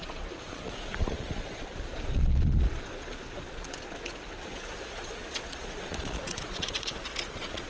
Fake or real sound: fake